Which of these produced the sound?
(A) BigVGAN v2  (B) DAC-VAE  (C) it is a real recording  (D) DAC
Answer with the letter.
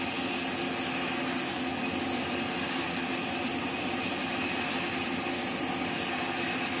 C